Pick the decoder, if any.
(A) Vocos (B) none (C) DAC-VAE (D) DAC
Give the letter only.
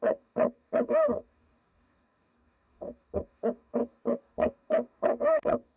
D